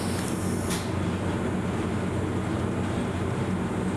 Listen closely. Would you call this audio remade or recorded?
recorded